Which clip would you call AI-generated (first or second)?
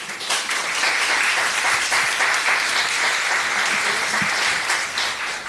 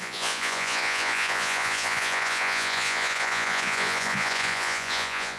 second